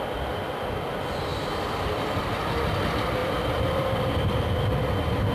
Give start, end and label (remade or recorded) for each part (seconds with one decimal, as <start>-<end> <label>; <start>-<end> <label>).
0.0-1.3 recorded; 1.3-2.2 remade; 2.2-3.2 recorded; 3.2-4.4 remade; 4.4-5.3 recorded